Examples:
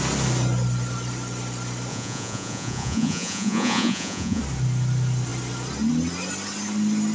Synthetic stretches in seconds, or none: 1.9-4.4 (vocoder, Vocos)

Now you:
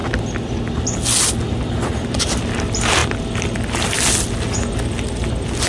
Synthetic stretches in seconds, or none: none

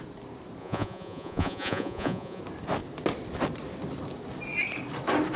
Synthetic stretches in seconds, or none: 0.6-2.4 (vocoder, Vocos)

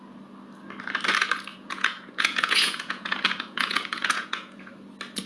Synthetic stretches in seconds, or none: 1.5-4.7 (vocoder, Vocos)

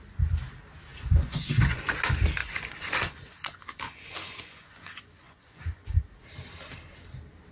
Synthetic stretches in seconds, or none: 0.9-1.8 (vocoder, Vocos); 2.4-6.0

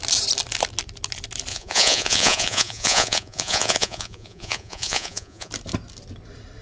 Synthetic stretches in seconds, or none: 1.5-5.5 (vocoder, Vocos)

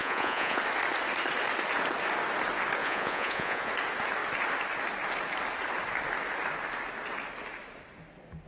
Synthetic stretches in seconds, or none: 0.0-0.6 (vocoder, Vocos); 2.8-3.7